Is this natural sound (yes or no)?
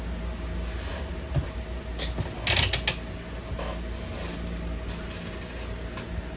yes